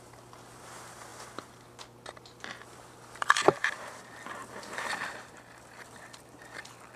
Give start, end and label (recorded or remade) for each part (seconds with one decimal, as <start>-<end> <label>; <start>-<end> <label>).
0.0-1.1 remade; 1.1-2.2 recorded; 2.2-4.4 remade; 4.4-4.9 recorded; 4.9-7.0 remade